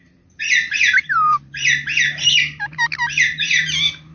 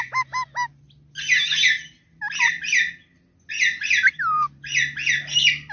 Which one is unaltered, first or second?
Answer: second